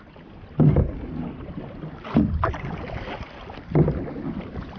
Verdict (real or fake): real